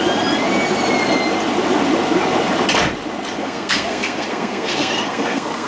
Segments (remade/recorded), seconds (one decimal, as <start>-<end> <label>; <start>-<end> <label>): 0.0-3.4 recorded; 3.4-5.7 remade